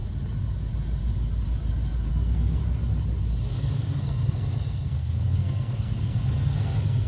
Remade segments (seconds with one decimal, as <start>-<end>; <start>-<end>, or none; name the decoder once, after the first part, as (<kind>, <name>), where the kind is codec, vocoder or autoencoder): 2.1-2.6 (codec, SNAC); 3.5-7.1